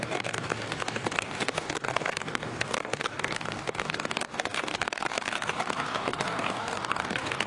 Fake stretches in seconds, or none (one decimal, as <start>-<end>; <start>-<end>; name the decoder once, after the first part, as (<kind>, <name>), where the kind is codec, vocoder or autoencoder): 0.0-7.5 (codec, DAC)